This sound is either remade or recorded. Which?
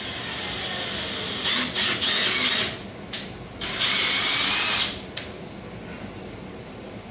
recorded